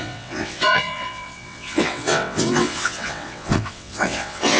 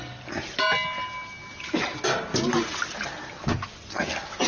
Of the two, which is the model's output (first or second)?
first